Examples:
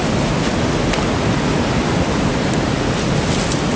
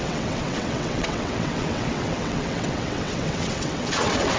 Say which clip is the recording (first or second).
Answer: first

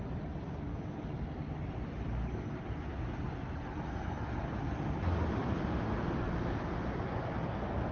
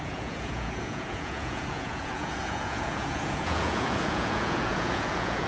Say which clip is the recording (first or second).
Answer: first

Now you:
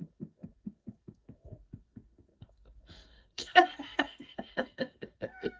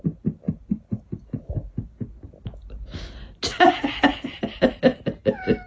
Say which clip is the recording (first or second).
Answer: second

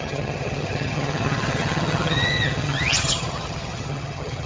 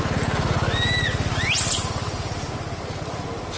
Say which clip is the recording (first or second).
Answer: second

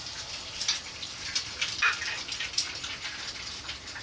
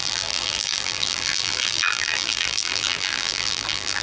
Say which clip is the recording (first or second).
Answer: first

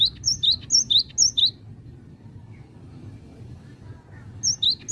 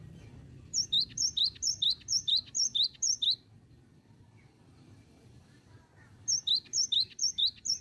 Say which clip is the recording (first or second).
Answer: first